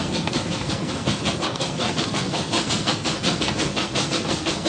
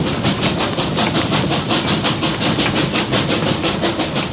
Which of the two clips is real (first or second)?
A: second